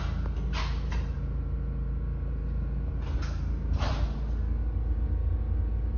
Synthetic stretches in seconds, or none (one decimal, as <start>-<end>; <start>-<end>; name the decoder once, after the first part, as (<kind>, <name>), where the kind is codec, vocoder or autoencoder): none